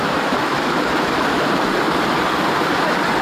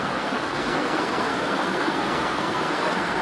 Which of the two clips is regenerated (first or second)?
second